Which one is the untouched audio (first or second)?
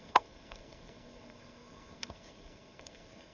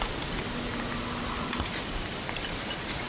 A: second